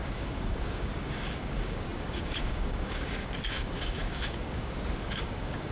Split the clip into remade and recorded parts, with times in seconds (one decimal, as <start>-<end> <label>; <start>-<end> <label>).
0.0-5.7 remade